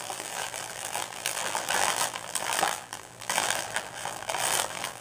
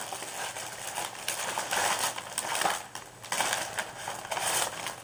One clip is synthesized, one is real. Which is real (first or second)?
second